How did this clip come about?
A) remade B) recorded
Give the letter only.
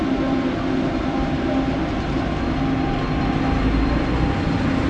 B